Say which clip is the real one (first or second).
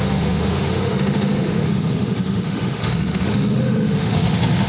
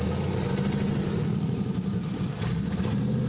second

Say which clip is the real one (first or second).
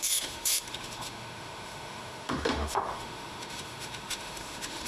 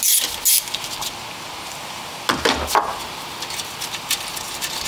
second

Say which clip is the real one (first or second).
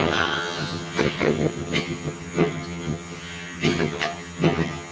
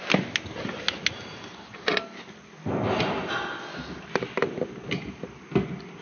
second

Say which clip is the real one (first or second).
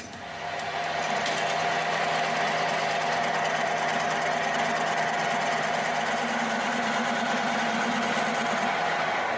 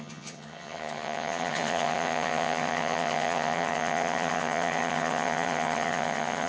first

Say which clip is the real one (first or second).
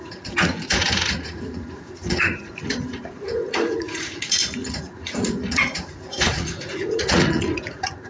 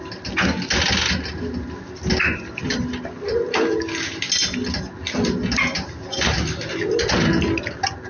second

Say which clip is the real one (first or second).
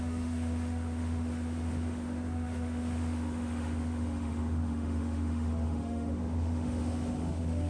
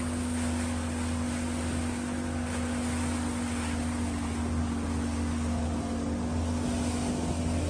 second